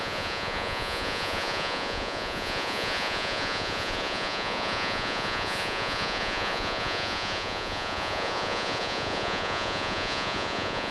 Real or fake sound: fake